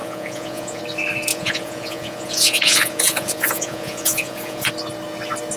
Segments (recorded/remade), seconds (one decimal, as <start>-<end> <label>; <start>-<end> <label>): 0.0-0.8 remade; 0.8-1.3 recorded; 1.3-4.7 remade; 4.7-5.6 recorded